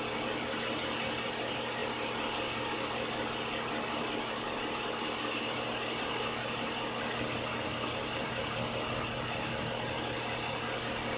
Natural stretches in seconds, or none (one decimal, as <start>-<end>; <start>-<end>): 0.0-11.2